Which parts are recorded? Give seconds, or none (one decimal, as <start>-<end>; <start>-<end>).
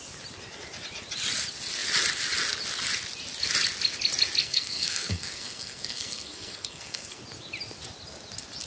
0.0-4.4; 7.2-8.7